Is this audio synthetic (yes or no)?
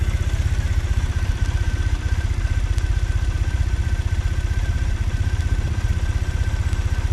no